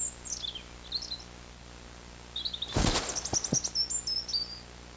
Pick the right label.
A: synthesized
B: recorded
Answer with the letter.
B